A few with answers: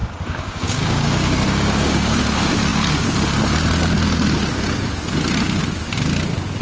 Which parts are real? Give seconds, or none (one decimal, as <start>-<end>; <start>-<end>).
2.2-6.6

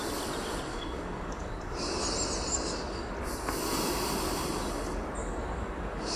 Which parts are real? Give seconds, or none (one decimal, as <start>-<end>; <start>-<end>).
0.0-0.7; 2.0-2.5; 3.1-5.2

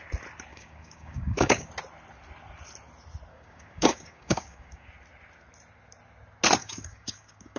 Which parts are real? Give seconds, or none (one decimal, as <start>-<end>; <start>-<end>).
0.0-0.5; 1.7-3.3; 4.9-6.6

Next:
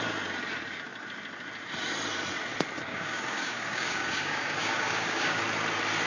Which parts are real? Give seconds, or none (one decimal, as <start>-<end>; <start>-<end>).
0.0-2.9; 5.4-6.1

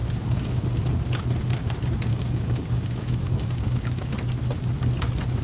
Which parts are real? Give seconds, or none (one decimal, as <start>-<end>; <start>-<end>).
0.6-2.1; 4.1-5.4